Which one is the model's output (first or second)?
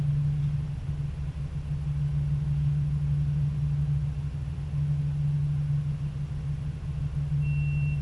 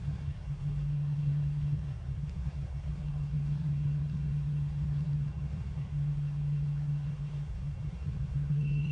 second